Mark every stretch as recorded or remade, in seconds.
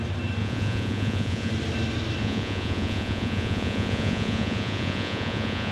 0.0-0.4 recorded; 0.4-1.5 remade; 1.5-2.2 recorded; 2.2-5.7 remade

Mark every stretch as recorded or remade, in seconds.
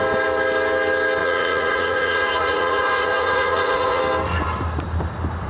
0.0-1.2 recorded; 1.2-4.0 remade; 4.0-5.5 recorded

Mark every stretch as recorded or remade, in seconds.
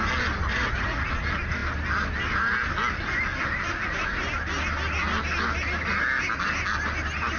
0.0-0.5 recorded; 0.5-1.1 remade; 1.1-7.4 recorded